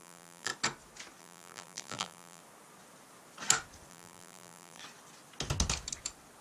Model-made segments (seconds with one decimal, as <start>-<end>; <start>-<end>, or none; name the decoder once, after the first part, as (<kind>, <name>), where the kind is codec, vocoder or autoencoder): 0.0-0.5 (vocoder, BigVGAN v2); 1.2-2.4; 3.9-4.8